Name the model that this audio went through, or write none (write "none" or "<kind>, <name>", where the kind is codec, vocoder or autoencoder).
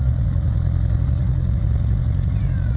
vocoder, Vocos